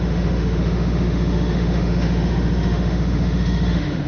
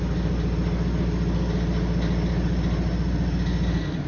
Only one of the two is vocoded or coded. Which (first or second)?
first